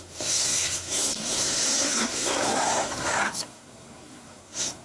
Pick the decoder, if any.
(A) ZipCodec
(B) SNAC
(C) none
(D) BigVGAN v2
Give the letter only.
B